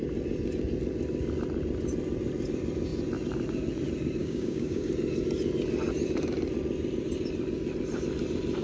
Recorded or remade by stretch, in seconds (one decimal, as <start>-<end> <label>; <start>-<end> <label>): 0.0-4.2 recorded; 4.2-4.9 remade; 4.9-8.6 recorded